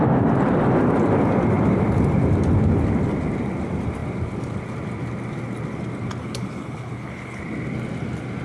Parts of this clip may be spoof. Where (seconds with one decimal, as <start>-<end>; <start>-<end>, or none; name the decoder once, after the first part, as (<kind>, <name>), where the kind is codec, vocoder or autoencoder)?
6.2-7.4 (codec, HILCodec)